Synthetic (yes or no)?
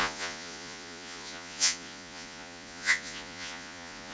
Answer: yes